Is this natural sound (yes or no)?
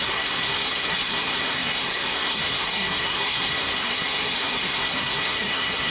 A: no